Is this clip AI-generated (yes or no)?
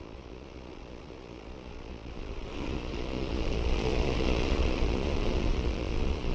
yes